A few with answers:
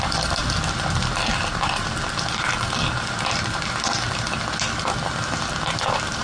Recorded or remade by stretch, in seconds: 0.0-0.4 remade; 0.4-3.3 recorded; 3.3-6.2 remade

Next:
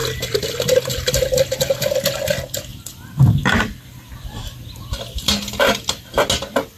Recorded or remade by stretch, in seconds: 0.0-1.8 remade; 1.8-2.7 recorded; 2.7-5.3 remade; 5.3-6.8 recorded